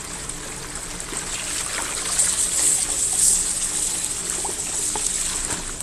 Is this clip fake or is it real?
real